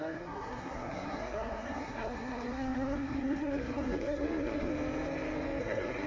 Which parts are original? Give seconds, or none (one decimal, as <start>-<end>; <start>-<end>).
4.7-5.6